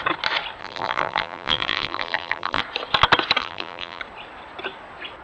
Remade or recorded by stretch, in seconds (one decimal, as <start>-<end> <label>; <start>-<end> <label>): 0.0-0.6 recorded; 0.6-2.6 remade; 2.6-3.4 recorded; 3.4-4.0 remade; 4.0-5.2 recorded